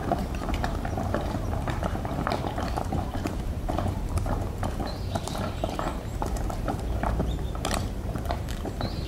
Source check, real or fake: fake